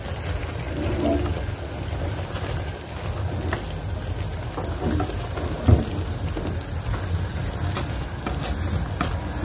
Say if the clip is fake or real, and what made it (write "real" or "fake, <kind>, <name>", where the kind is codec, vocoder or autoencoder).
real